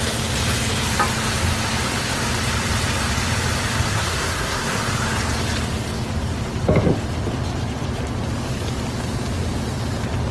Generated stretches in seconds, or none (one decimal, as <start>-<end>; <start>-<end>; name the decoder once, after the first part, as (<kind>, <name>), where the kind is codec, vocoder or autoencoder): 3.9-4.8 (codec, SNAC)